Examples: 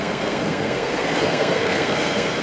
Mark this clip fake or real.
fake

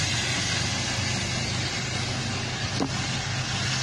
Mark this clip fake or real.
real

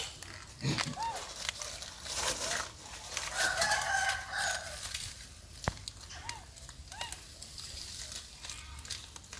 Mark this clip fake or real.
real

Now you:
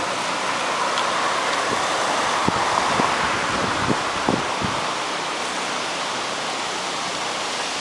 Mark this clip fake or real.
real